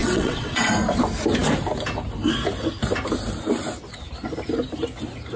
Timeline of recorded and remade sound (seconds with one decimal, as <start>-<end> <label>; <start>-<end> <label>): 0.0-0.7 remade; 0.7-5.4 recorded